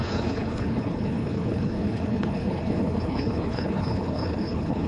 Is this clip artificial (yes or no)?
yes